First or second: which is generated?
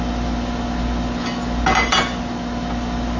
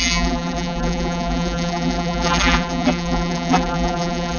second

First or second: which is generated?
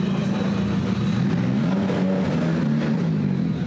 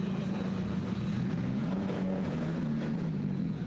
second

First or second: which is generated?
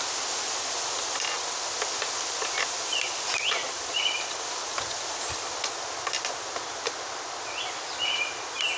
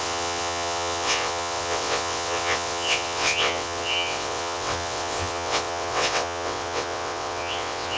second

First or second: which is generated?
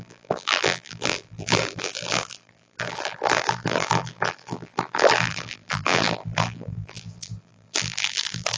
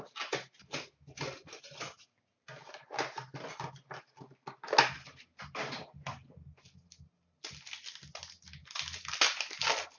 first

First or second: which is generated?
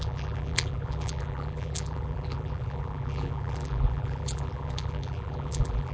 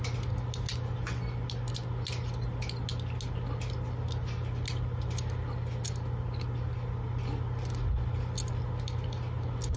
first